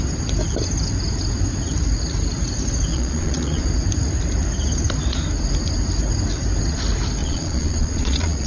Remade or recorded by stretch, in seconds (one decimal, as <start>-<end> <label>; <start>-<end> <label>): 0.0-2.9 recorded; 2.9-3.6 remade; 3.6-7.2 recorded; 7.2-8.5 remade